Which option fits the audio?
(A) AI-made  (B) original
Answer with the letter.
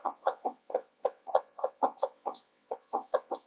A